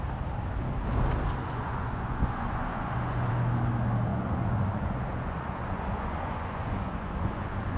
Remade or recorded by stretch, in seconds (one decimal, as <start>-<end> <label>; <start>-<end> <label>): 0.0-1.4 recorded; 1.4-3.3 remade; 3.3-4.1 recorded; 4.1-7.8 remade